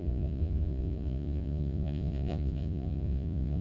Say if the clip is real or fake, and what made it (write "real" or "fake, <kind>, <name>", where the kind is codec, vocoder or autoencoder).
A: fake, vocoder, Vocos